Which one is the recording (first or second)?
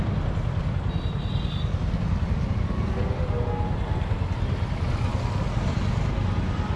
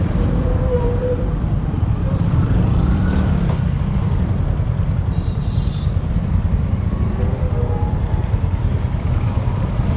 first